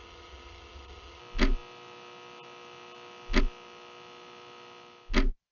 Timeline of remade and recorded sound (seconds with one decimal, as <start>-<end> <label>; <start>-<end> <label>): 0.0-1.2 remade; 1.2-5.5 recorded